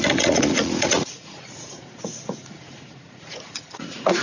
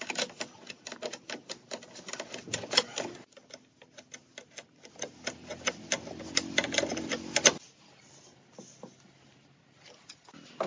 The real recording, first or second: second